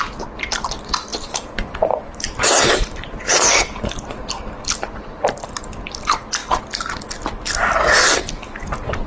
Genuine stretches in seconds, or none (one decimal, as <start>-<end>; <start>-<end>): 0.0-1.1; 3.8-9.1